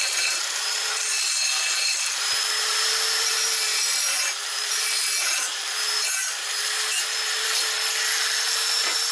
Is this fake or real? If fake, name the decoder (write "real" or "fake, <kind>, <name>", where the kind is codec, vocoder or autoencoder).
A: fake, vocoder, BigVGAN v2